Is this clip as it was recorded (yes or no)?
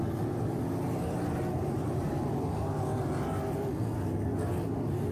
yes